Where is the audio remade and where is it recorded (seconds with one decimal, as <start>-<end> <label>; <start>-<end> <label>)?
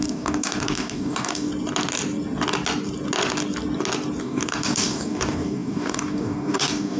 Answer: 0.0-1.5 remade; 1.5-4.2 recorded; 4.2-7.0 remade